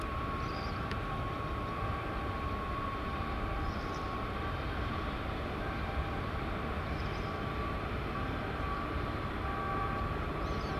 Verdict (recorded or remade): remade